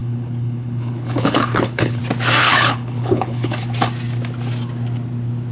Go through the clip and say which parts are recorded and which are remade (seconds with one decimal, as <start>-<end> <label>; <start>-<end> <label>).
0.0-2.0 remade; 2.0-2.4 recorded; 2.4-3.6 remade; 3.6-5.5 recorded